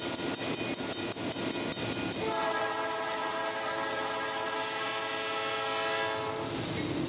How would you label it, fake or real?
real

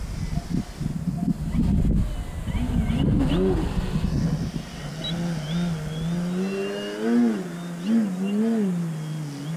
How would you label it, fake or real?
real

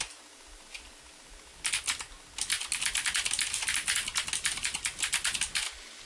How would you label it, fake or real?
real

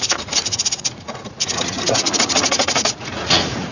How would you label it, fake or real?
fake